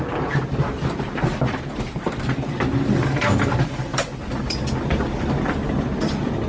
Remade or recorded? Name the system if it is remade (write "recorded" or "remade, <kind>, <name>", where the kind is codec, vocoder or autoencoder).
remade, vocoder, BigVGAN v2